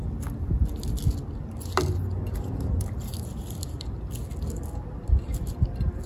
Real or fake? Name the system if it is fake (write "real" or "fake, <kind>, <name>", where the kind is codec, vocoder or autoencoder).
real